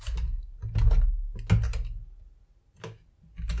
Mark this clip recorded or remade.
recorded